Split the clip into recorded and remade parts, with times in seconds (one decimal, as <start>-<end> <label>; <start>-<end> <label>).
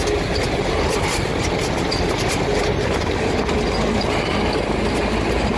0.0-5.6 recorded